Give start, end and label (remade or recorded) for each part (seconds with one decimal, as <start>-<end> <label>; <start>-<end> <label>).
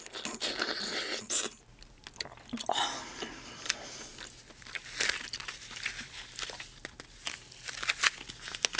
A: 0.0-8.8 recorded